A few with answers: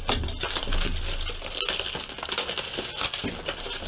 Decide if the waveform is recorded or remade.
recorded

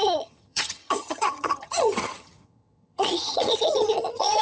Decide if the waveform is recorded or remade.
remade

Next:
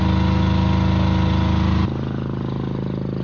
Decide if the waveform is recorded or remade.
recorded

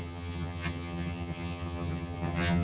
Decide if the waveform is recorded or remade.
remade